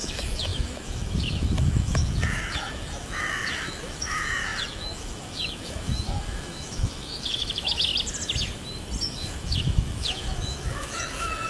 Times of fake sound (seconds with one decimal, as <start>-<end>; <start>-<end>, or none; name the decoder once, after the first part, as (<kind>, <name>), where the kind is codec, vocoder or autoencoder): 0.0-7.9 (autoencoder, DAC-VAE); 9.0-11.5